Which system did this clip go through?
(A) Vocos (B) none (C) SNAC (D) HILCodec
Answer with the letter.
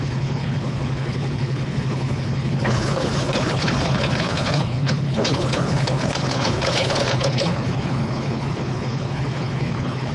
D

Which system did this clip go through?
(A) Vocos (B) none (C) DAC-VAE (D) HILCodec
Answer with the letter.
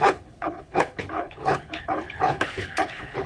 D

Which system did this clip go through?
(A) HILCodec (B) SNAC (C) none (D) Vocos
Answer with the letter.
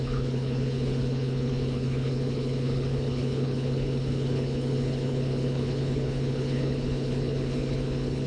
A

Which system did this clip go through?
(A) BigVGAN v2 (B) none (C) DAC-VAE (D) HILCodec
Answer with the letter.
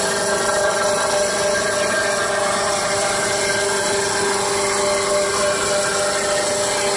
B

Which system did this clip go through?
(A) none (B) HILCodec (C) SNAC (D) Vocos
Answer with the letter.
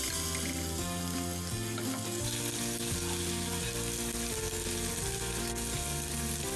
A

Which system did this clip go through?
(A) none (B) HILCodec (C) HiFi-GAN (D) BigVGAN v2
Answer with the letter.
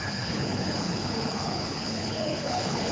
B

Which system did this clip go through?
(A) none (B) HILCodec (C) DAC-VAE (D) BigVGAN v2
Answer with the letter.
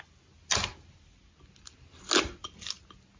A